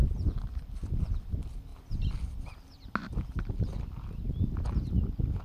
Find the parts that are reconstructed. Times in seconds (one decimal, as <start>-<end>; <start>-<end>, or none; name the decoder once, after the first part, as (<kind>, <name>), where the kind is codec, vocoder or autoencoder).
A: none